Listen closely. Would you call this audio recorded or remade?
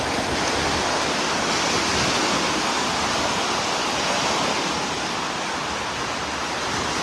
recorded